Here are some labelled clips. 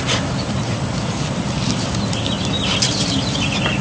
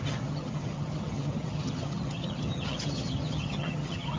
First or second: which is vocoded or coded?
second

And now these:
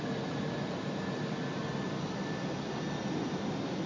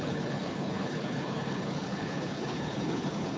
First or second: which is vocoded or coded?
second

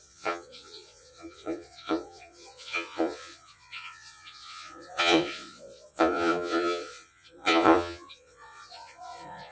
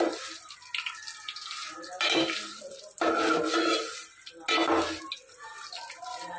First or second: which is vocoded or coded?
first